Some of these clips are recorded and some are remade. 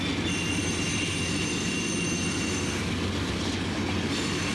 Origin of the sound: recorded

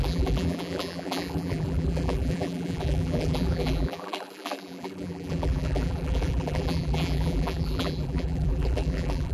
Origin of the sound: remade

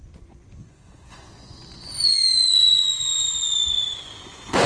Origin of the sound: remade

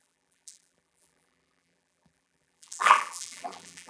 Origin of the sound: remade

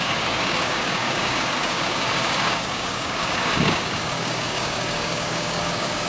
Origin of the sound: remade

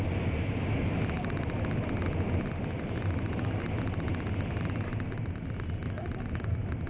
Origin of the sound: recorded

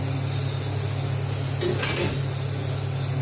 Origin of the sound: recorded